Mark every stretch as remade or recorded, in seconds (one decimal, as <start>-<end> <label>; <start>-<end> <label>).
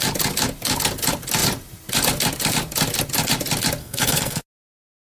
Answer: 0.0-3.8 recorded; 3.8-4.4 remade; 4.4-5.2 recorded